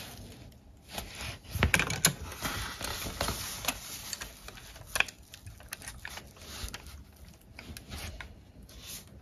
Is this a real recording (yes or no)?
yes